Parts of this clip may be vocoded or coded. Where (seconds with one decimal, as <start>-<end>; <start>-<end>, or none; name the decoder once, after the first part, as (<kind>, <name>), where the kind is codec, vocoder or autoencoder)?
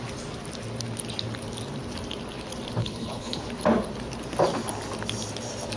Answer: 2.8-3.4 (codec, HILCodec)